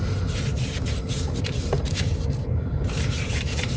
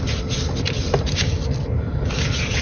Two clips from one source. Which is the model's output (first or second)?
first